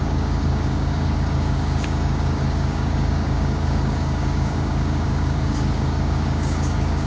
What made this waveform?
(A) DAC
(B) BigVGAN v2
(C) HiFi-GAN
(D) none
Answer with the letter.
A